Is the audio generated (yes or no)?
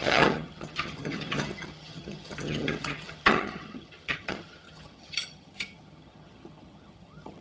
yes